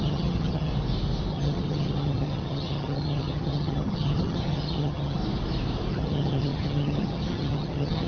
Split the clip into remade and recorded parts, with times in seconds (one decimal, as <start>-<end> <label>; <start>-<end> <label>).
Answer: 0.0-0.7 remade; 0.7-1.3 recorded; 1.3-5.2 remade; 5.2-5.9 recorded; 5.9-8.1 remade